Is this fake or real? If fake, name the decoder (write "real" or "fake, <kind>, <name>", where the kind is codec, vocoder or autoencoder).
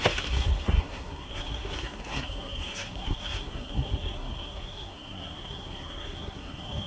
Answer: fake, codec, SNAC